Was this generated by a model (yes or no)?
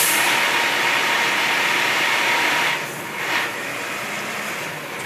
no